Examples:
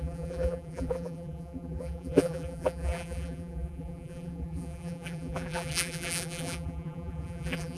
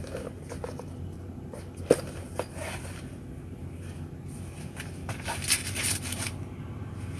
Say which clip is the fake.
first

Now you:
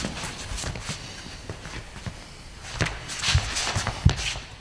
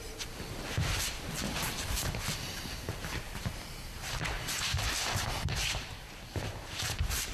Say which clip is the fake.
second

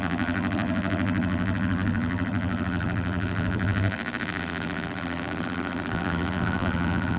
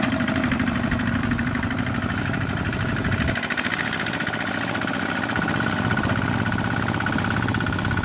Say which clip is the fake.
first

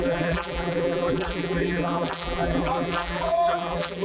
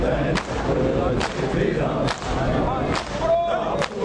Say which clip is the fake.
first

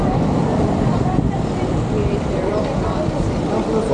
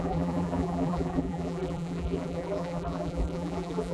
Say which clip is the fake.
second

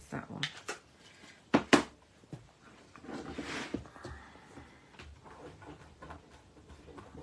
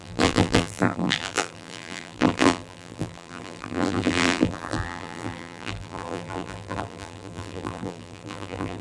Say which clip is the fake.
second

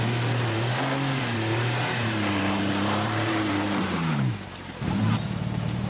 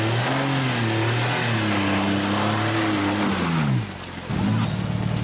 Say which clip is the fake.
first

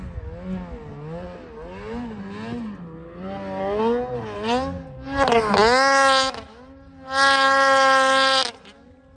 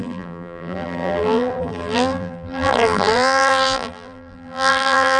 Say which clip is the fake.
second